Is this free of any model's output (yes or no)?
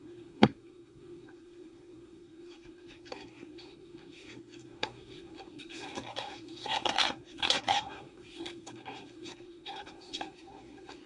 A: no